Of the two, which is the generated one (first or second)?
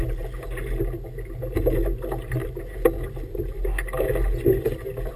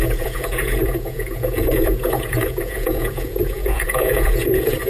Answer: second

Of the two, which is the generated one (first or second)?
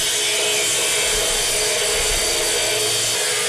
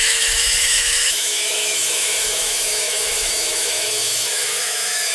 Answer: second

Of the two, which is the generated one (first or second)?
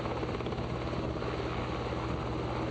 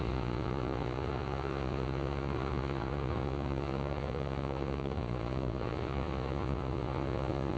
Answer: second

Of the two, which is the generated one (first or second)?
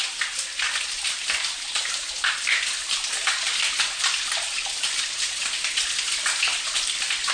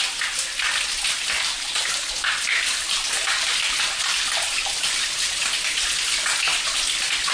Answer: first